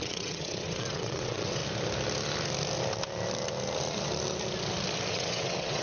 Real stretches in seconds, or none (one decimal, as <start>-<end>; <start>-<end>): 1.6-5.1